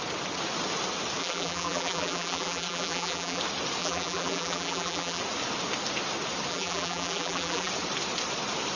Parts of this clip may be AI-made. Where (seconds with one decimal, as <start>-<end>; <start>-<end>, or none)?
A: 1.2-3.4; 3.8-5.2; 6.5-7.7